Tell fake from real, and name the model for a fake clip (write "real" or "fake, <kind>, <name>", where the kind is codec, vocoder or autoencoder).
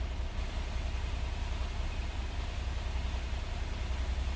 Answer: real